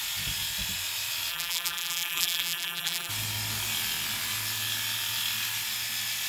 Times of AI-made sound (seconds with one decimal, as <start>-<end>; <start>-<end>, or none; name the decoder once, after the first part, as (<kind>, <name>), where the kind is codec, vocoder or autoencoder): 1.3-3.1 (vocoder, BigVGAN v2)